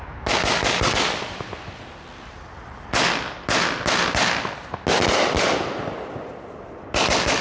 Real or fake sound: real